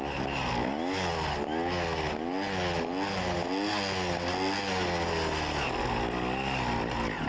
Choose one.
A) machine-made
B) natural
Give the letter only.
B